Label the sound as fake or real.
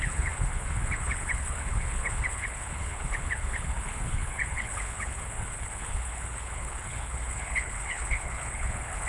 fake